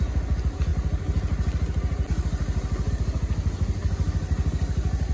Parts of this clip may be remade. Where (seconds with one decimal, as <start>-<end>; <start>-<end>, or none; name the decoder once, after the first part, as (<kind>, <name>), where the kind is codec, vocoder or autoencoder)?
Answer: none